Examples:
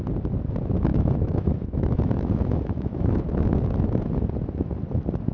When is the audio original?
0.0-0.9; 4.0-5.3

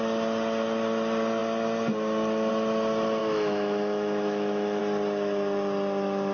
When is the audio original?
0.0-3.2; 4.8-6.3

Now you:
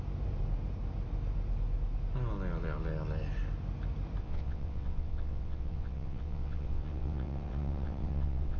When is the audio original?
0.0-4.2

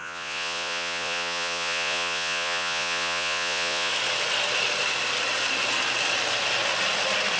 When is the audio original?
3.9-7.4